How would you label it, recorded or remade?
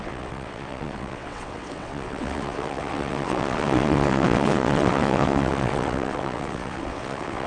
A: remade